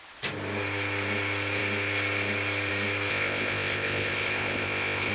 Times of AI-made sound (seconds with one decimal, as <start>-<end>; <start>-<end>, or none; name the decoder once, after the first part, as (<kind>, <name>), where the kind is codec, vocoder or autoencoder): 3.1-5.1 (codec, ZipCodec)